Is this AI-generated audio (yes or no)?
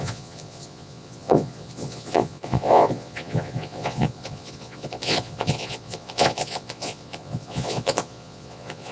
yes